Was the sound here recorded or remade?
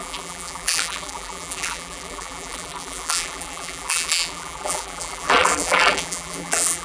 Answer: remade